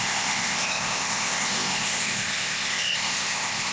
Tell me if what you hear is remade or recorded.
remade